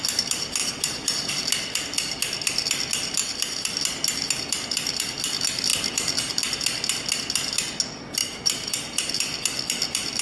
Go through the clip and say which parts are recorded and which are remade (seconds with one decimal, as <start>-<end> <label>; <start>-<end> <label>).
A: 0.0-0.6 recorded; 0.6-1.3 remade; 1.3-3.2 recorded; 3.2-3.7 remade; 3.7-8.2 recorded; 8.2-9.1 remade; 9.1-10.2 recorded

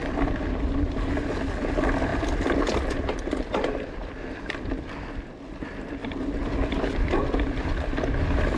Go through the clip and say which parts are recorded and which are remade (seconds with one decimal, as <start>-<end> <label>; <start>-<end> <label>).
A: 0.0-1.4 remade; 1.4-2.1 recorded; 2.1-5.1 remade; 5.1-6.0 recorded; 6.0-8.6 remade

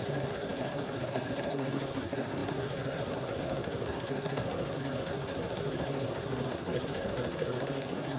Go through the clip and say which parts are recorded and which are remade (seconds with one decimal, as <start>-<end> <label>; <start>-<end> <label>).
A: 0.0-8.2 remade